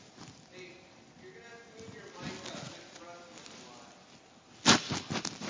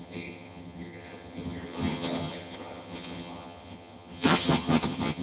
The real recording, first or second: first